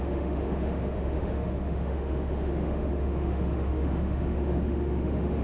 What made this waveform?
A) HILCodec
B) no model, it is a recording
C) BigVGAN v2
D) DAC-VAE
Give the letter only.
D